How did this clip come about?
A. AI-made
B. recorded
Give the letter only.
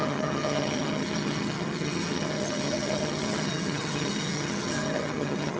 A